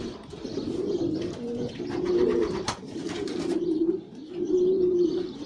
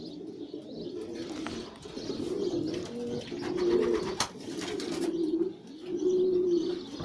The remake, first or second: first